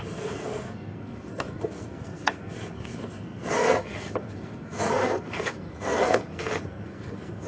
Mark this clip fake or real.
fake